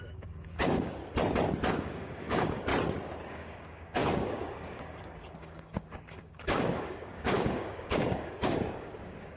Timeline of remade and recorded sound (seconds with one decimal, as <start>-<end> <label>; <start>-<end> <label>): 0.0-1.0 remade; 1.0-1.7 recorded; 1.7-2.7 remade; 2.7-3.3 recorded; 3.3-9.4 remade